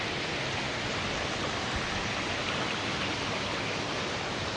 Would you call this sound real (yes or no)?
yes